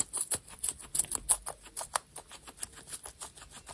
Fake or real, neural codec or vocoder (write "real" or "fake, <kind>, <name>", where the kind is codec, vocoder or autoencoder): real